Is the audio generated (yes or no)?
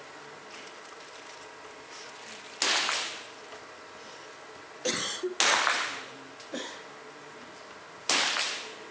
no